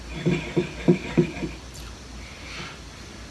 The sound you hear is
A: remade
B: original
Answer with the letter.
B